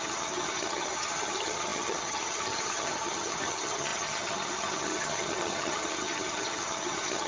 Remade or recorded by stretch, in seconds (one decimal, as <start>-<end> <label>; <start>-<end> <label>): 0.0-7.3 remade